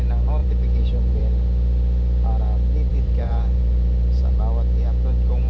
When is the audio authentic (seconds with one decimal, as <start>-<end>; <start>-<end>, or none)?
0.0-0.4; 1.2-2.9; 4.4-5.5